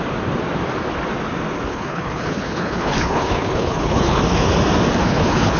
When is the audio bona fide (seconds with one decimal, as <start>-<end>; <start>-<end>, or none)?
0.0-1.7; 4.2-5.0